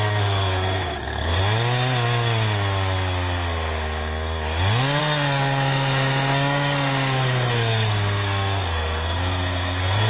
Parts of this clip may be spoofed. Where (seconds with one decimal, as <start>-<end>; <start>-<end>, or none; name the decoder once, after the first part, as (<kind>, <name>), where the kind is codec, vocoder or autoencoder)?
0.0-1.4 (codec, SNAC); 5.0-10.1